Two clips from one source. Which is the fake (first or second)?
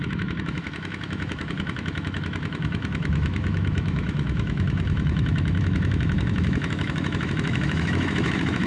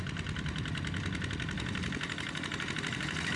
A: first